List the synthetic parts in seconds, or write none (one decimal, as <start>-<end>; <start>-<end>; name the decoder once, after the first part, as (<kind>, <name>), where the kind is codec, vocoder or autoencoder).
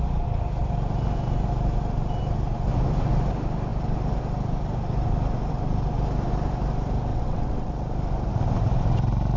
7.1-7.7 (vocoder, WaveNeXt)